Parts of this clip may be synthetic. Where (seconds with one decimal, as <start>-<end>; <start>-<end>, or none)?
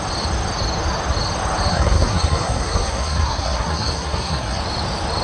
1.7-4.6